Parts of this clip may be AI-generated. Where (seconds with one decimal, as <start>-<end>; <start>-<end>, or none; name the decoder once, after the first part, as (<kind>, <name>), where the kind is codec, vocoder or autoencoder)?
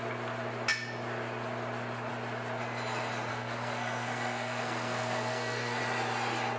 3.3-5.8 (codec, SNAC)